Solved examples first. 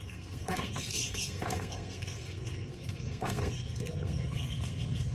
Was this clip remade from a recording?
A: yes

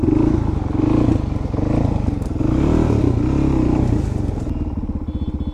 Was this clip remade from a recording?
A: no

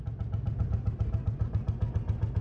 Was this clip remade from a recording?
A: no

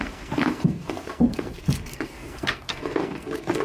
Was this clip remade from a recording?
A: yes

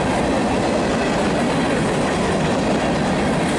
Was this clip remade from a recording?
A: no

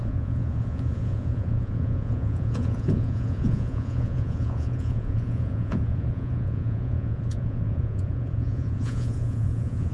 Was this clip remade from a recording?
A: yes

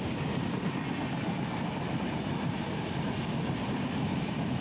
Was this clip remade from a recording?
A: no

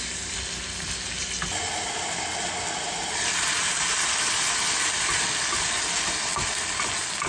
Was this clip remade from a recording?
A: no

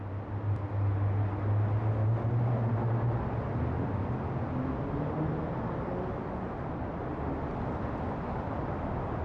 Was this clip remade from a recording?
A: no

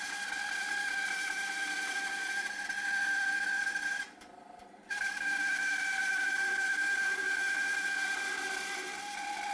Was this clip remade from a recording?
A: yes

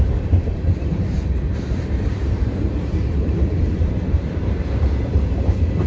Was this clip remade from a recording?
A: yes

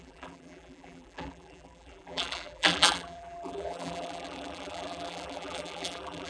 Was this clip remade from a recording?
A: yes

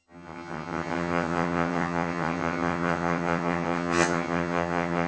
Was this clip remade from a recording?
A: yes